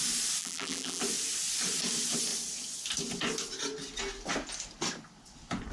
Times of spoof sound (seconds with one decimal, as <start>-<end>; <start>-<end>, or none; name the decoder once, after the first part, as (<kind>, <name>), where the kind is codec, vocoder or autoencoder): 0.4-1.0 (vocoder, BigVGAN v2)